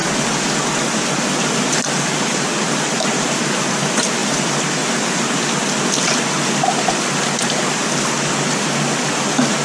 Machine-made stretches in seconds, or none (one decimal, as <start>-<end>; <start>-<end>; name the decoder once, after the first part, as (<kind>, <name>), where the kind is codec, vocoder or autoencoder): none